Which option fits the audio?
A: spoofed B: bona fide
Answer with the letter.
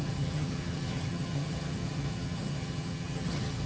A